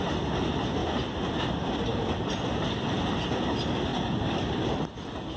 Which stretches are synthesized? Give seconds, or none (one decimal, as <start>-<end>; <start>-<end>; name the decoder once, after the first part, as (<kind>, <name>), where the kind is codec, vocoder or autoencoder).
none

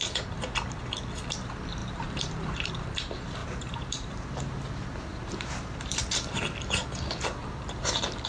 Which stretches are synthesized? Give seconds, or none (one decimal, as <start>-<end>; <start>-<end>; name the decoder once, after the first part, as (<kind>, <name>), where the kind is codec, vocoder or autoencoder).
1.8-2.7 (vocoder, BigVGAN v2); 3.4-4.4; 5.1-6.0

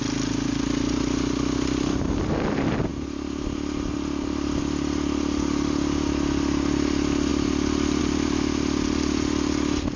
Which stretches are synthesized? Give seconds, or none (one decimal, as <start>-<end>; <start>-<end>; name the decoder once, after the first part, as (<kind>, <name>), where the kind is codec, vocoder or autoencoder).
2.9-4.6 (vocoder, BigVGAN v2)

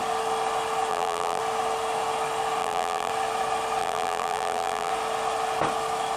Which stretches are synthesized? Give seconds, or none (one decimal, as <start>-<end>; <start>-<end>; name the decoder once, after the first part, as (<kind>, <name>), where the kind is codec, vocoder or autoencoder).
0.9-1.4 (vocoder, BigVGAN v2); 2.6-3.1; 3.8-4.9

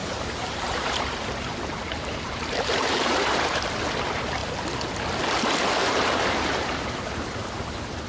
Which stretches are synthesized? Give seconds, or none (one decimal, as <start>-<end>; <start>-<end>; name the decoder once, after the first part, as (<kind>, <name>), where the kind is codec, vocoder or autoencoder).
0.0-3.6 (vocoder, BigVGAN v2); 5.8-8.1

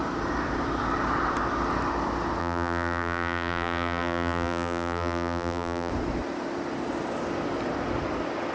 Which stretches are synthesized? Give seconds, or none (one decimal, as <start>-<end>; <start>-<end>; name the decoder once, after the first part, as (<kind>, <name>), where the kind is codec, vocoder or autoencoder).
2.4-5.9 (vocoder, BigVGAN v2)

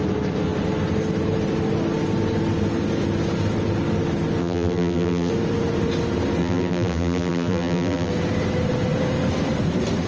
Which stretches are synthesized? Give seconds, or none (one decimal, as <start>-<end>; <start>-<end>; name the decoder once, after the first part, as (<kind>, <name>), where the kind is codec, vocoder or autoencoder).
4.4-5.3 (vocoder, BigVGAN v2); 6.4-8.1

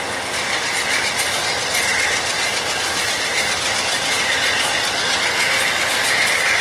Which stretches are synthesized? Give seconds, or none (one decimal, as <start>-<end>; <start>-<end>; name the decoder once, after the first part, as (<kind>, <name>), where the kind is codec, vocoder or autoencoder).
none